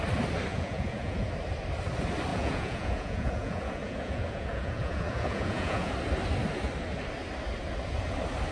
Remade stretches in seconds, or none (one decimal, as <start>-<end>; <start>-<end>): 0.5-1.3; 2.3-5.9